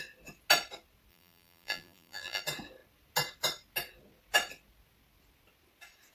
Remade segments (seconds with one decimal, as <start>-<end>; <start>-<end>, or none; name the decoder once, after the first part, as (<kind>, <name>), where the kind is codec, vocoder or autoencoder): 1.1-2.4 (vocoder, BigVGAN v2)